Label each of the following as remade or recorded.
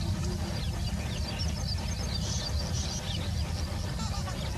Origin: recorded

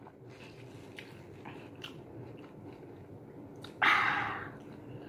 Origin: recorded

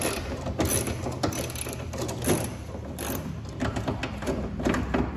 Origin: recorded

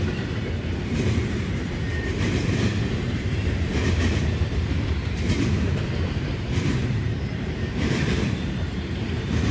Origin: remade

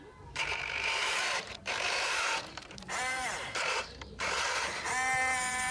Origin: remade